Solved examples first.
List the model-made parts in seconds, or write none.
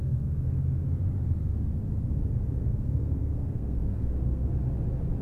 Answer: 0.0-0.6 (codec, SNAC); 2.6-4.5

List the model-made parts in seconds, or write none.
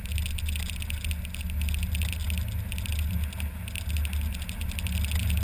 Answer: none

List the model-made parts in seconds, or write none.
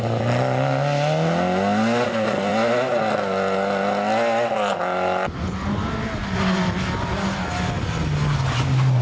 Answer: none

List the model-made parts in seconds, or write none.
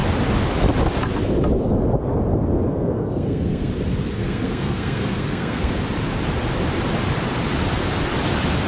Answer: 2.7-3.7 (codec, SNAC); 4.2-5.7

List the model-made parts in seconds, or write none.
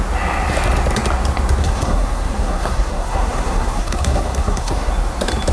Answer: 1.6-4.9 (codec, SNAC)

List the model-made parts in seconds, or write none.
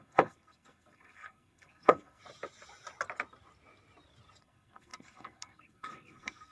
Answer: 0.0-2.2 (codec, SNAC); 4.4-6.5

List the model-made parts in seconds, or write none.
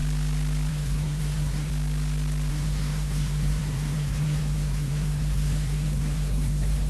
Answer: 0.7-1.7 (codec, SNAC); 2.5-6.9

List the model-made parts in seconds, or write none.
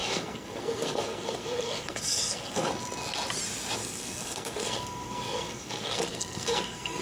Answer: 0.0-2.7 (codec, SNAC); 3.8-7.0